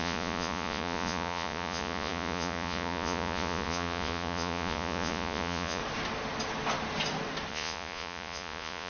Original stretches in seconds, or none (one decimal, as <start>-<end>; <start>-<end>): 5.8-7.5